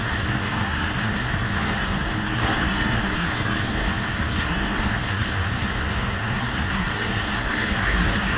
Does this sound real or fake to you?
fake